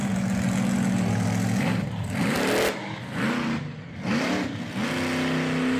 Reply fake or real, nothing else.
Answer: real